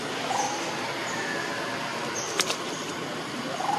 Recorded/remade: recorded